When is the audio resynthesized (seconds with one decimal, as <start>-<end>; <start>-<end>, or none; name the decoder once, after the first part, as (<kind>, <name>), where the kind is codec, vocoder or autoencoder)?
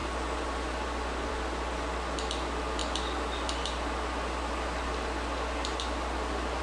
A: 0.0-2.8 (vocoder, BigVGAN v2)